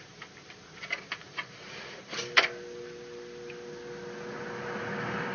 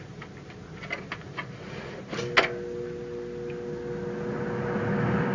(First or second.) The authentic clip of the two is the second